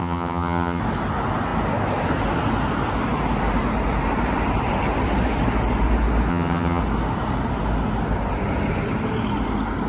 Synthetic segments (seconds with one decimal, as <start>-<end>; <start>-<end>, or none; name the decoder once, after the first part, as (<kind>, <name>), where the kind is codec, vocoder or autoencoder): 0.0-0.8 (vocoder, HiFi-GAN); 6.3-6.8